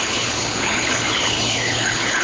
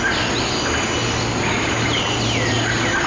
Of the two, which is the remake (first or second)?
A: first